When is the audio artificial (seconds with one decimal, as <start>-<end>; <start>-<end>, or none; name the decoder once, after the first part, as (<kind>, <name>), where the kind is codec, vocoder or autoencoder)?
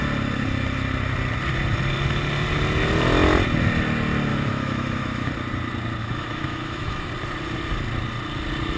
4.3-5.3 (autoencoder, DAC-VAE); 6.0-7.1